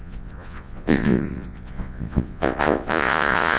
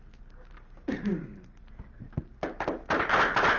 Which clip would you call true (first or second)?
second